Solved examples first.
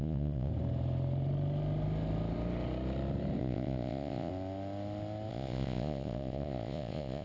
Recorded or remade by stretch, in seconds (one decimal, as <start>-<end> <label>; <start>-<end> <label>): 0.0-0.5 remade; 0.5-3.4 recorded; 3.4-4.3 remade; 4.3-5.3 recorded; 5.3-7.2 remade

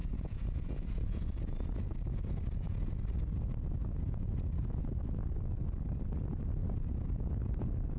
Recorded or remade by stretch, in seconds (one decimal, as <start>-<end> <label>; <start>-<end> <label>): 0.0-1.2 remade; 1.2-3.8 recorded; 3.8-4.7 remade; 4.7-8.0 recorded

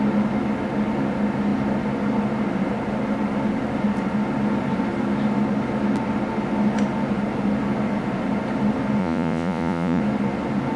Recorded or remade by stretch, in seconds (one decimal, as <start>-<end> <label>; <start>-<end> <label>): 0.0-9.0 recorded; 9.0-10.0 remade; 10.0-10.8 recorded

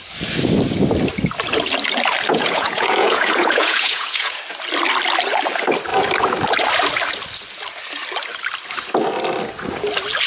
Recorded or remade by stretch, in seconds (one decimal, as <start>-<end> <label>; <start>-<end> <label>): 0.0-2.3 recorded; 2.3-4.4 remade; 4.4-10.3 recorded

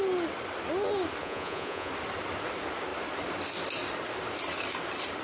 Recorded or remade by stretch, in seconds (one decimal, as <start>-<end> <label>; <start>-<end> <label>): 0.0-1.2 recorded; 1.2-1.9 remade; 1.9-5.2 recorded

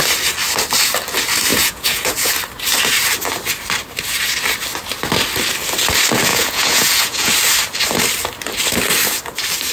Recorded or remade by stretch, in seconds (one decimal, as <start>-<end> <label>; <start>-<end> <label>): 0.0-1.5 recorded; 1.5-2.3 remade; 2.3-6.3 recorded; 6.3-7.3 remade; 7.3-9.7 recorded

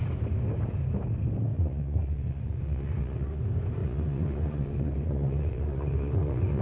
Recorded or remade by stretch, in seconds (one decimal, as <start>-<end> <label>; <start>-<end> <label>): 0.0-1.5 recorded; 1.5-3.4 remade; 3.4-3.8 recorded; 3.8-6.6 remade